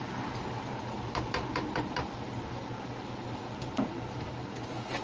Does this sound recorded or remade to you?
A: remade